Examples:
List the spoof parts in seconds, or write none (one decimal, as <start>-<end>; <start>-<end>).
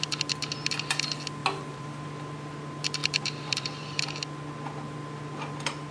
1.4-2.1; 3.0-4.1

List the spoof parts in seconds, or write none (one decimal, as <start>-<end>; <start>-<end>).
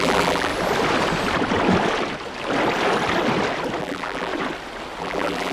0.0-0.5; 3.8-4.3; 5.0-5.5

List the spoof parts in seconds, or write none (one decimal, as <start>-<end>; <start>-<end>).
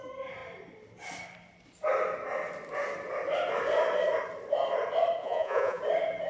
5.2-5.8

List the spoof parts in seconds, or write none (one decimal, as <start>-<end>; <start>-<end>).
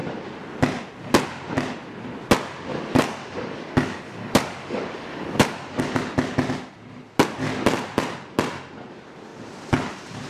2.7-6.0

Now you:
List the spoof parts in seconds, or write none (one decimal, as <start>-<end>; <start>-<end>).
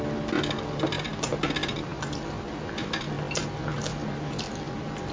none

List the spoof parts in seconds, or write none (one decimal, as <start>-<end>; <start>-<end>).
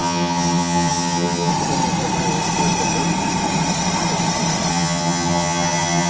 0.0-1.5; 4.7-6.1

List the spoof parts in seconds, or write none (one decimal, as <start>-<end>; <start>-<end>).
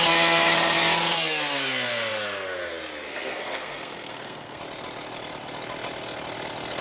3.1-4.6